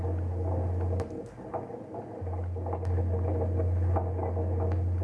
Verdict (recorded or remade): recorded